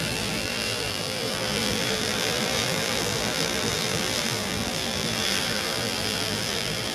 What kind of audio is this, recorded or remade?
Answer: remade